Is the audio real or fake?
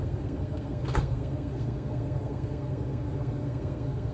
fake